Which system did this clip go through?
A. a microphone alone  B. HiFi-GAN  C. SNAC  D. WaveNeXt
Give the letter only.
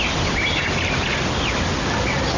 A